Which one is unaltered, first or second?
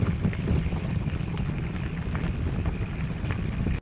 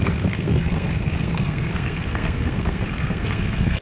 first